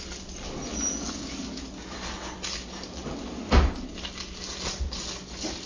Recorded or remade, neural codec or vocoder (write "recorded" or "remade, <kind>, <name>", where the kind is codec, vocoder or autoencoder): recorded